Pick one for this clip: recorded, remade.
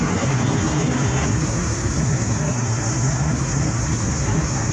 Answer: remade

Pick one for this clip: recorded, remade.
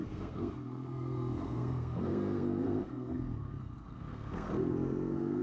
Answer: remade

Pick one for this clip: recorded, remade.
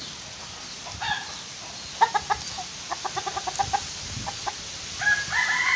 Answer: recorded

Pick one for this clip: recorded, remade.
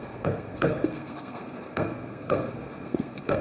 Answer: remade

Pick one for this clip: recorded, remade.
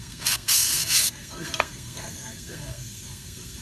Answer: remade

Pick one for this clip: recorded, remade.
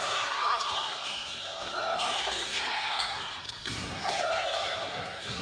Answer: remade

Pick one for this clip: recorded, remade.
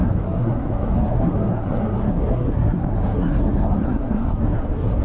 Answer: remade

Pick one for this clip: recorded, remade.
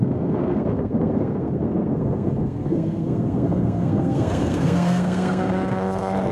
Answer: remade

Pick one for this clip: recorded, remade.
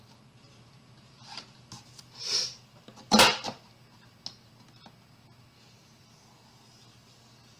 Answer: recorded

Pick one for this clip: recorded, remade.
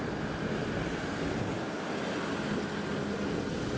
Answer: recorded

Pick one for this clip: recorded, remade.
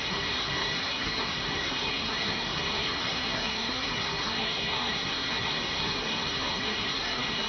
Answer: remade